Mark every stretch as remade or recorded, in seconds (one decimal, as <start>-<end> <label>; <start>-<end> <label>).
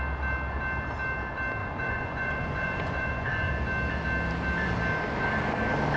0.0-1.6 recorded; 1.6-3.5 remade; 3.5-6.0 recorded